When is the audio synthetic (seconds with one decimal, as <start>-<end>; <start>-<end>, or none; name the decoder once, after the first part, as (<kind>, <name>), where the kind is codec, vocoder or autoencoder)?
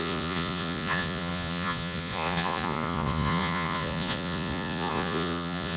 0.0-5.8 (vocoder, Vocos)